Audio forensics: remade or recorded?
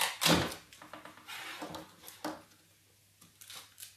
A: recorded